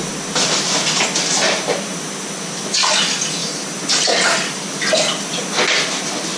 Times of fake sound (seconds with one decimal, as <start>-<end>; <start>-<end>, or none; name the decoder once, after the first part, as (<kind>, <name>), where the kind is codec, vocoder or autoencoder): none